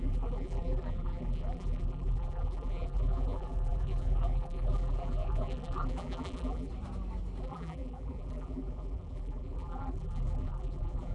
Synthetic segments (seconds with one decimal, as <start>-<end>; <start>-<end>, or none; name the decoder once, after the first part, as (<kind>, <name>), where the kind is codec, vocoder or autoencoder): 0.0-6.7 (vocoder, BigVGAN v2); 7.4-11.1